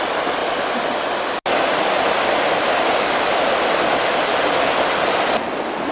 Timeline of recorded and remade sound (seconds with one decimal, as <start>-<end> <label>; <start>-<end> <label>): 0.0-5.9 recorded